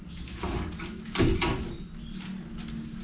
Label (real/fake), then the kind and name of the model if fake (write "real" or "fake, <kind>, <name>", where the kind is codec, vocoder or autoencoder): real